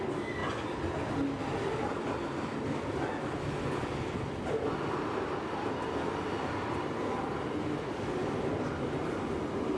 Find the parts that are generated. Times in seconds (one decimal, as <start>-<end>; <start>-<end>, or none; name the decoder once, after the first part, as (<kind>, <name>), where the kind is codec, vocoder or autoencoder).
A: none